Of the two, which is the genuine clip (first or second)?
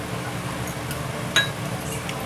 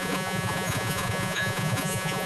first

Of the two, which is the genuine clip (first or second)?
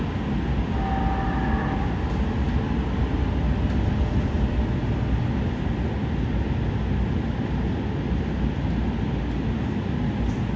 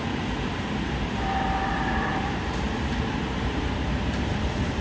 first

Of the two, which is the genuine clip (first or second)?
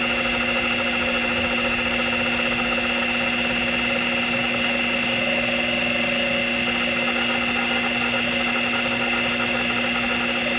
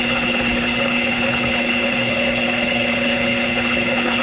first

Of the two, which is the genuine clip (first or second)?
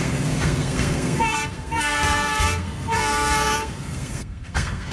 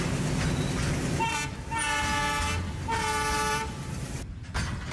second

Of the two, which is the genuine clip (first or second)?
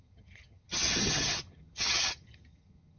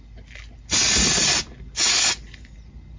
second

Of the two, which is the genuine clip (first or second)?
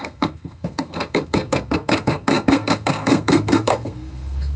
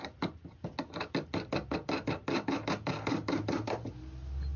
second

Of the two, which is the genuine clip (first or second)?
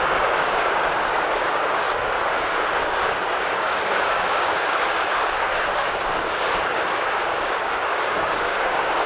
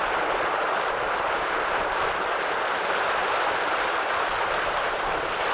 second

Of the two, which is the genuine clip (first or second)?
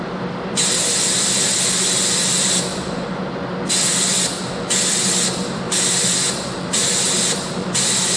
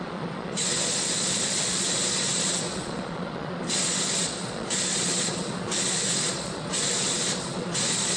first